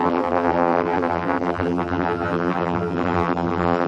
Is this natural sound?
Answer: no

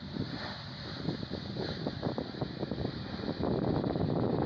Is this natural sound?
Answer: yes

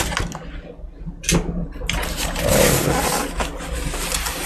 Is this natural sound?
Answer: yes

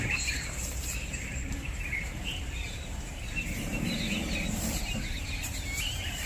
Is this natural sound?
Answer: no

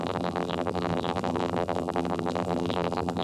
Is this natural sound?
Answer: no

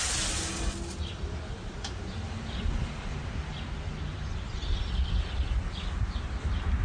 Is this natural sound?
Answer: yes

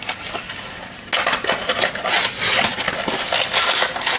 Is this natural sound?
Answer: yes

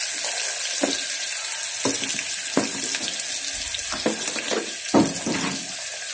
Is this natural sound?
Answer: yes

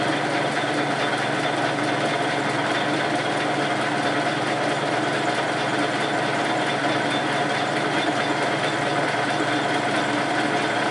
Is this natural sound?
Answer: yes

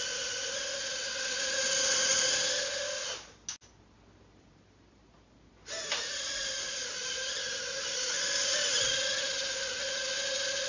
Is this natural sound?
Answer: yes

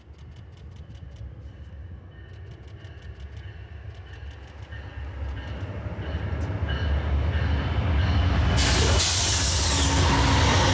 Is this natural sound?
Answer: yes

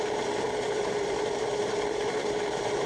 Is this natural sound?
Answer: no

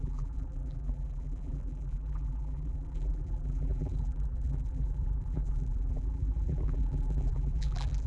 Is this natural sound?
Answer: no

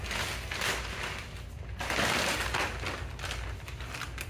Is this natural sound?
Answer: yes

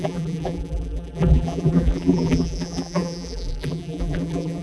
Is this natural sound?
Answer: no